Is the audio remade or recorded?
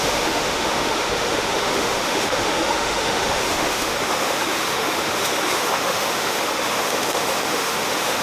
remade